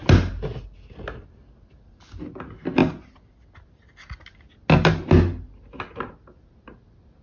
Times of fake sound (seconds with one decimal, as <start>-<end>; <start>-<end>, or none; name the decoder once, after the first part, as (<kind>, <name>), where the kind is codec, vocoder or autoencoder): none

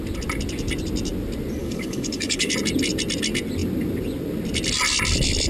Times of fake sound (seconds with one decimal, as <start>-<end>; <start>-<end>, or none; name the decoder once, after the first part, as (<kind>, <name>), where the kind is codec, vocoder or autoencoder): 1.6-2.5 (codec, DAC)